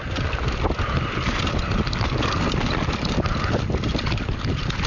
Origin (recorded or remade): recorded